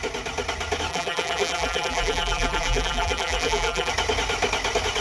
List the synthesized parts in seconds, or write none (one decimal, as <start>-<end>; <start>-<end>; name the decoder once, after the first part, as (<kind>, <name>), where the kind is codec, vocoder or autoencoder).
0.9-3.9 (vocoder, BigVGAN v2)